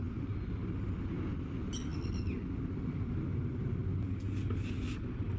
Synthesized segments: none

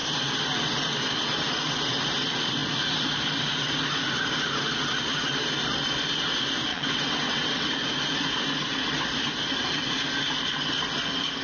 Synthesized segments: 6.7-7.7